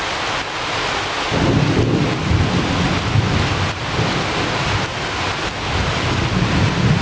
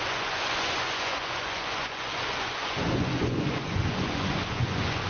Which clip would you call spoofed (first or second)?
second